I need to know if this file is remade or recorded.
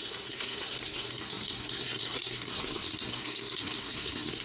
remade